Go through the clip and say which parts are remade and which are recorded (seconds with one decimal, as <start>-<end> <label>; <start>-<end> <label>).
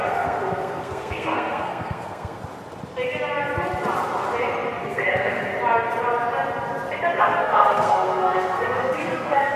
0.0-2.4 remade; 2.4-4.8 recorded; 4.8-5.5 remade; 5.5-7.2 recorded; 7.2-9.6 remade